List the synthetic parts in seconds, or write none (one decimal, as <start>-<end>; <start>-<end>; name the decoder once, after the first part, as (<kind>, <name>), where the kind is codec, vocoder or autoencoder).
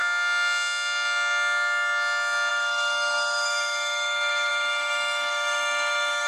2.5-6.3 (autoencoder, DAC-VAE)